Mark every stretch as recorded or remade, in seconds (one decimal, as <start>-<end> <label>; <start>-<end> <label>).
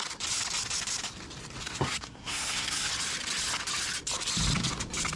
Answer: 0.0-1.6 recorded; 1.6-2.9 remade; 2.9-5.2 recorded